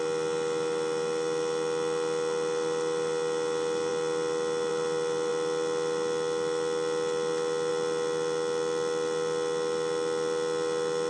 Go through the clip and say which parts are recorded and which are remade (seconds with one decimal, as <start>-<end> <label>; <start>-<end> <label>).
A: 0.0-11.1 recorded